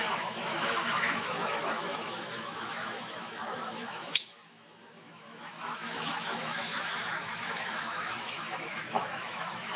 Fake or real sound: fake